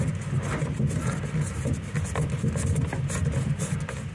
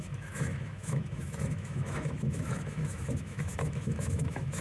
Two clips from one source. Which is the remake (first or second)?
second